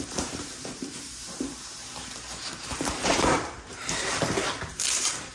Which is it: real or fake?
fake